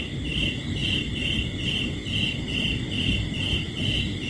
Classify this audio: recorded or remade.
recorded